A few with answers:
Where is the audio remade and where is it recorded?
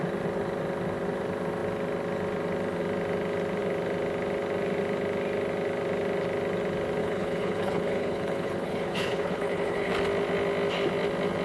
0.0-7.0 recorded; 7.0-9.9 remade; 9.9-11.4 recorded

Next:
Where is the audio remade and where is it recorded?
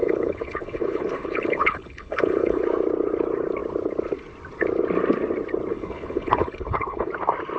0.0-2.6 remade; 2.6-5.7 recorded; 5.7-7.1 remade; 7.1-7.6 recorded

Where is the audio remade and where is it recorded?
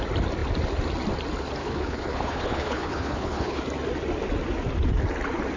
0.0-1.6 recorded; 1.6-3.6 remade; 3.6-5.6 recorded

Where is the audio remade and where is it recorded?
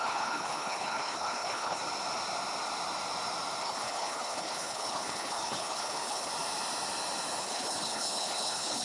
0.0-1.8 remade; 1.8-3.6 recorded; 3.6-6.3 remade; 6.3-7.4 recorded; 7.4-8.8 remade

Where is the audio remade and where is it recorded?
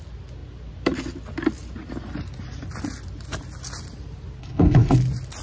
0.0-4.4 recorded; 4.4-5.0 remade; 5.0-5.4 recorded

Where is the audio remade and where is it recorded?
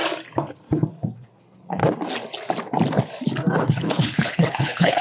0.0-1.4 recorded; 1.4-1.8 remade; 1.8-3.6 recorded; 3.6-5.0 remade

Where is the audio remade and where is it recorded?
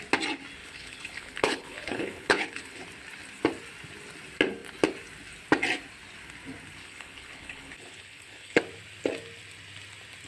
0.0-0.6 recorded; 0.6-2.8 remade; 2.8-6.8 recorded; 6.8-8.6 remade; 8.6-10.3 recorded